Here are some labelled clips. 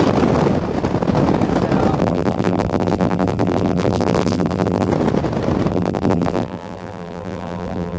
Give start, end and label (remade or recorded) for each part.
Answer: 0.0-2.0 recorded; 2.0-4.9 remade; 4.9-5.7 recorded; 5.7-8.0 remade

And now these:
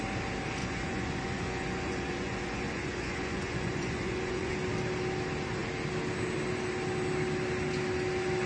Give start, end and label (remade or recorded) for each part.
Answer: 0.0-0.6 recorded; 0.6-4.5 remade; 4.5-8.5 recorded

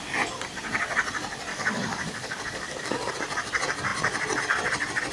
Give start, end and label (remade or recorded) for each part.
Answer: 0.0-1.5 recorded; 1.5-3.1 remade; 3.1-5.1 recorded

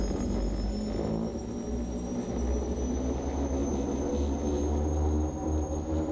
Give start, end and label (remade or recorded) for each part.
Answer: 0.0-6.1 recorded

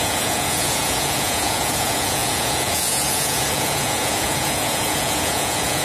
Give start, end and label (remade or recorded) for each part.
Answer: 0.0-5.8 remade

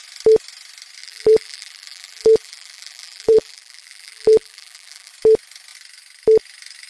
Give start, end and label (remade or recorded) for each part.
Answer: 0.0-1.0 recorded; 1.0-5.1 remade; 5.1-6.9 recorded